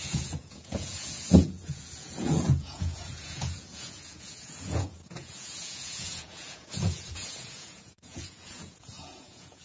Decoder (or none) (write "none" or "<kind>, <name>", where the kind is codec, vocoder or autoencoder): vocoder, Vocos